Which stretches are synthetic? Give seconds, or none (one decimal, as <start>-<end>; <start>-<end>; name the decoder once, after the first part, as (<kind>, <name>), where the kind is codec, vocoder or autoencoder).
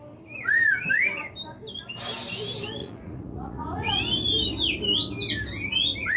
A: 2.8-3.9 (vocoder, Vocos)